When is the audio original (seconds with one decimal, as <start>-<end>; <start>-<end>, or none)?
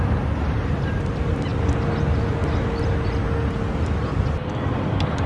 0.0-5.3